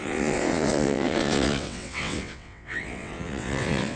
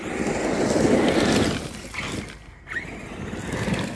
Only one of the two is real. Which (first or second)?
second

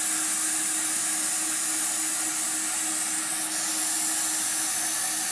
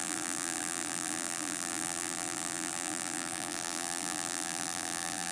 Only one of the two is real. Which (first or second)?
first